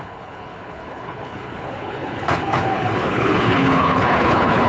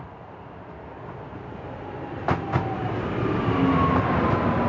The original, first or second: second